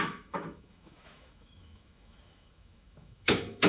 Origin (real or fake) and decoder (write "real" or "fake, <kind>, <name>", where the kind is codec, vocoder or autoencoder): fake, autoencoder, DAC-VAE